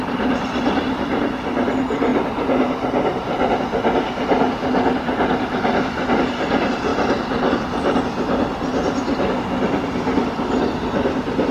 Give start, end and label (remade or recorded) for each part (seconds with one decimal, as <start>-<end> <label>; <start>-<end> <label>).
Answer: 0.0-2.1 remade; 2.1-6.2 recorded; 6.2-8.7 remade; 8.7-9.3 recorded; 9.3-11.5 remade